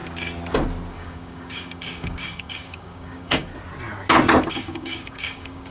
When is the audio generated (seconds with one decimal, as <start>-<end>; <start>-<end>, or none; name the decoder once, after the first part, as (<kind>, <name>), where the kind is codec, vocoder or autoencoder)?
0.9-3.5 (codec, DAC); 4.5-5.7